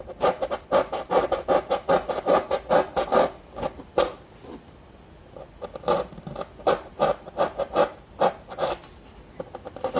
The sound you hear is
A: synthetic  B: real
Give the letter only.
B